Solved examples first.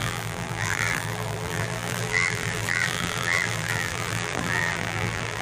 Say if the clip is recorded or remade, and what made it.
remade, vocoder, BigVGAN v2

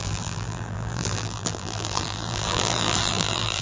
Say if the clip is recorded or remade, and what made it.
remade, vocoder, BigVGAN v2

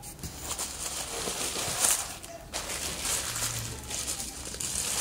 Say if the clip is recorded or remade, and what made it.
recorded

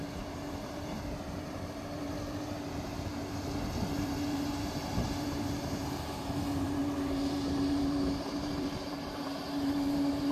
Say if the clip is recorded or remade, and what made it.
remade, vocoder, BigVGAN v2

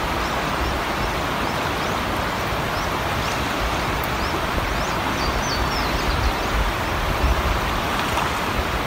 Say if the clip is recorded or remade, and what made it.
recorded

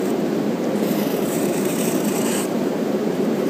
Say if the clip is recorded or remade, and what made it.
remade, vocoder, BigVGAN v2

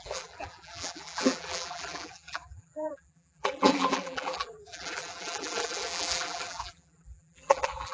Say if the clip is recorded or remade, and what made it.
remade, vocoder, BigVGAN v2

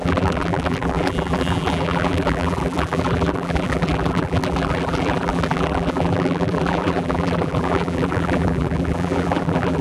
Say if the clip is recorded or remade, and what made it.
remade, vocoder, BigVGAN v2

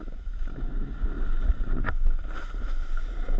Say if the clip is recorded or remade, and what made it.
recorded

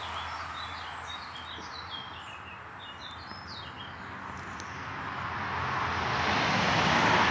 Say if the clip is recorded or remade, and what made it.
recorded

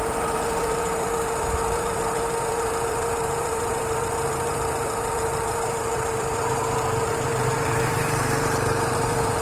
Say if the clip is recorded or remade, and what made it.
remade, vocoder, BigVGAN v2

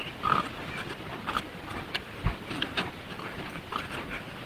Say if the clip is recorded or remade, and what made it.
remade, vocoder, BigVGAN v2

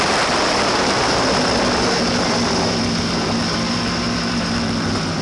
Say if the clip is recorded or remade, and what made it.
remade, vocoder, BigVGAN v2